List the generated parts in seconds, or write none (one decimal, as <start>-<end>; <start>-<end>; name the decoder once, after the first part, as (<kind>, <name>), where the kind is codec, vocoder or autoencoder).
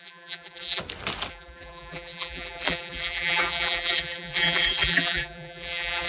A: 0.0-0.8 (vocoder, BigVGAN v2); 1.3-6.1